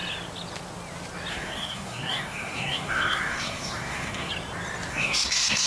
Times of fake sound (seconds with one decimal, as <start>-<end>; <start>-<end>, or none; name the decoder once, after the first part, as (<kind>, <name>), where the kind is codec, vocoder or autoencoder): 1.3-4.3 (codec, SNAC); 4.9-5.7